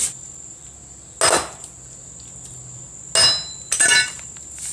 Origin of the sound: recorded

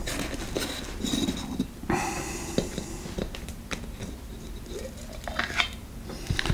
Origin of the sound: recorded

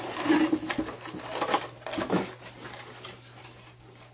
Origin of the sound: recorded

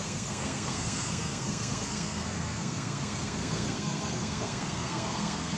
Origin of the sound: remade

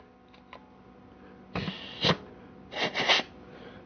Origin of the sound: recorded